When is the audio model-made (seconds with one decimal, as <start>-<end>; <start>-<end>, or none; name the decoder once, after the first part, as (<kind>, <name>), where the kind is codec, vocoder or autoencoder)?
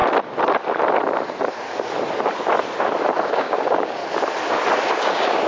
3.3-4.0 (codec, DAC); 4.9-5.5